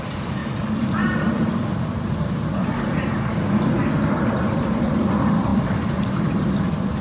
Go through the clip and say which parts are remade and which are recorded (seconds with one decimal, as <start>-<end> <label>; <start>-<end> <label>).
0.0-0.4 remade; 0.4-4.2 recorded; 4.2-7.0 remade